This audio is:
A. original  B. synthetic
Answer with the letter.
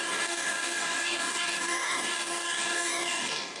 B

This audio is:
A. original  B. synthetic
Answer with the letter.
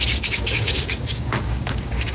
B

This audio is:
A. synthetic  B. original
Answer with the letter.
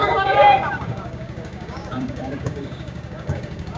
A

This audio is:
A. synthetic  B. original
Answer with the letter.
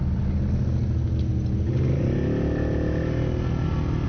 B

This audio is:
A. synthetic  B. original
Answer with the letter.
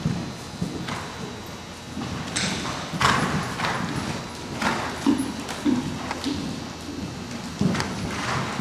B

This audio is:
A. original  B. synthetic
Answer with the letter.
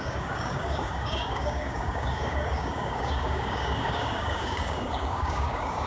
B